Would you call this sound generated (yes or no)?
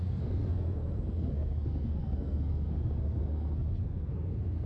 yes